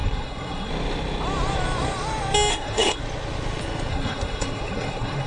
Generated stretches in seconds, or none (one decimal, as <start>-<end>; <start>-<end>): 0.0-0.7; 2.5-3.0; 3.9-5.3